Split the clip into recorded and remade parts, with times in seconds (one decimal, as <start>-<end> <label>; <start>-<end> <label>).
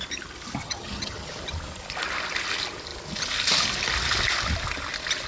0.0-0.6 recorded; 0.6-1.3 remade; 1.3-5.3 recorded